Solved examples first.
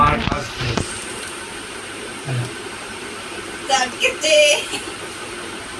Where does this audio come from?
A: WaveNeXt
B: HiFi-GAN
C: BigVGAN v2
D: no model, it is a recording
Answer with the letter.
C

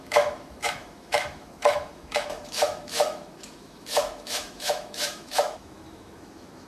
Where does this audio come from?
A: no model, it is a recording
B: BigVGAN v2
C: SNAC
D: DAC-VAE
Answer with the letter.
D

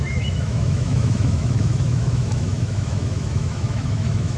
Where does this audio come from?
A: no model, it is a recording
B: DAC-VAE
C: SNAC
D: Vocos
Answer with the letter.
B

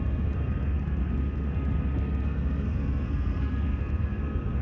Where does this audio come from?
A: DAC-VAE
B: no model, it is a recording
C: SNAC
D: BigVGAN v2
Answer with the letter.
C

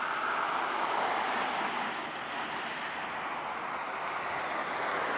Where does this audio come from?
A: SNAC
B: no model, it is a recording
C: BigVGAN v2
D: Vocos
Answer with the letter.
B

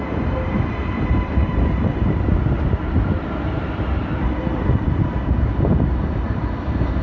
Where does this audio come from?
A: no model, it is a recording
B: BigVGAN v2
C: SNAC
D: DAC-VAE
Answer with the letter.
B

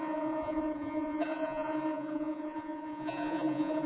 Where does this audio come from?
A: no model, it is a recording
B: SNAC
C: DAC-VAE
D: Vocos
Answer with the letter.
D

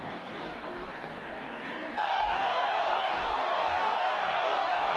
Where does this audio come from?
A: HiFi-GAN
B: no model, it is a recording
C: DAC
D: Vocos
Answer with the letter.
C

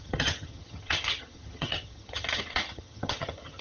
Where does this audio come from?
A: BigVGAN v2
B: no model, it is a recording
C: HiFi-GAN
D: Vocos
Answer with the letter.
C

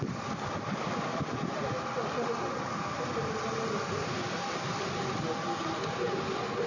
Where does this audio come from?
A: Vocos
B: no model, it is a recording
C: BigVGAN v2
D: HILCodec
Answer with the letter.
B